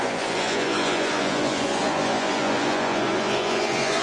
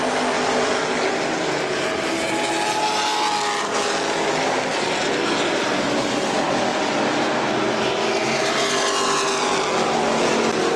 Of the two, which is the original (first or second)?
second